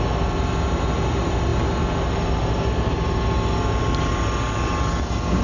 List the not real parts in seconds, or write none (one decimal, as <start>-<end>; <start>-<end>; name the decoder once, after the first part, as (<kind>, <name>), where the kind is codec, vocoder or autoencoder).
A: none